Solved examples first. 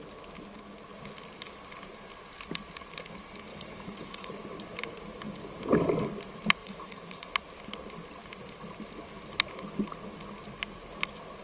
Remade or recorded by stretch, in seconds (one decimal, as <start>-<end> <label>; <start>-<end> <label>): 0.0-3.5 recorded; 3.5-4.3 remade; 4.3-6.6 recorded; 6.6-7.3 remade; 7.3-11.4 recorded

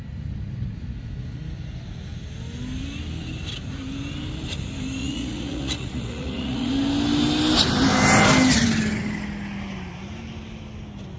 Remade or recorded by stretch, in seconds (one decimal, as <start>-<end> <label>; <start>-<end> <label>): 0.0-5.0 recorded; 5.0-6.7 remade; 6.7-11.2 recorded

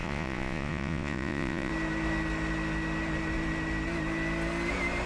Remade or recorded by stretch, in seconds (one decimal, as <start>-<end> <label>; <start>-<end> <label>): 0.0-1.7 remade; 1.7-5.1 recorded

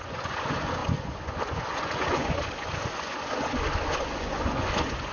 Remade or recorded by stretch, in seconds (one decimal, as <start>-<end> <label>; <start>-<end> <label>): 0.0-5.1 remade

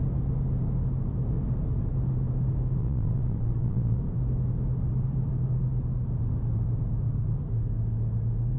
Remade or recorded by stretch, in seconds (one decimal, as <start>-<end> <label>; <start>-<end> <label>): 0.0-2.8 recorded; 2.8-4.0 remade; 4.0-8.6 recorded